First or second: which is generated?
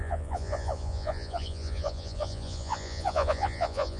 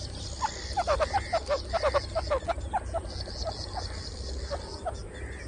first